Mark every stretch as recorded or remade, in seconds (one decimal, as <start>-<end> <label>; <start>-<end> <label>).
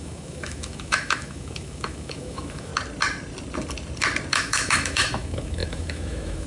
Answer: 0.0-2.7 remade; 2.7-4.3 recorded; 4.3-6.5 remade